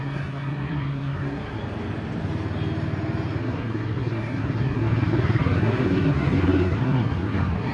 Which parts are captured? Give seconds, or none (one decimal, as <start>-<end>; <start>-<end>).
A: 1.6-3.4